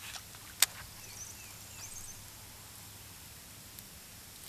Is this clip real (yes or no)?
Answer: yes